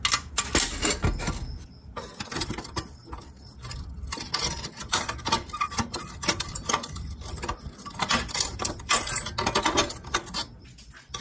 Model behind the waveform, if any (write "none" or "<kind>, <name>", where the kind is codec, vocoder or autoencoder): none